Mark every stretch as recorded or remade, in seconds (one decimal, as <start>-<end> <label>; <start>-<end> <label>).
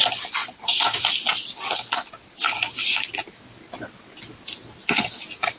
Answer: 0.0-5.6 recorded